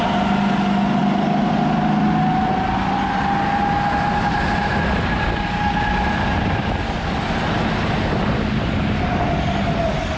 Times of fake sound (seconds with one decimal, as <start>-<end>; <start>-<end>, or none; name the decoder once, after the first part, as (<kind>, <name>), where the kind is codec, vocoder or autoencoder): none